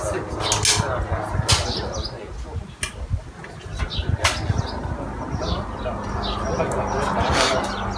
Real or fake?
real